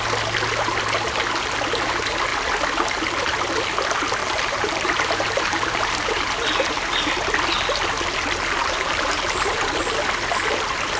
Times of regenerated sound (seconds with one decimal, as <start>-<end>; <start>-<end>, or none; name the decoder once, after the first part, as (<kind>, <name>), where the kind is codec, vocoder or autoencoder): 4.2-6.3 (vocoder, BigVGAN v2); 8.6-9.8